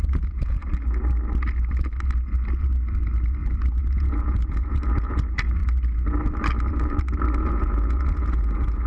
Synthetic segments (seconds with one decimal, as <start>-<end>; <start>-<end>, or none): 0.0-0.6; 3.8-5.6; 7.4-8.9